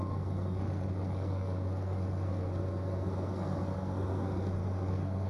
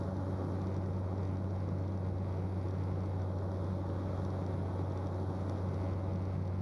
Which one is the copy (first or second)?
first